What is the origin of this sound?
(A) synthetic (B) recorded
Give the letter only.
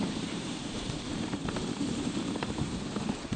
A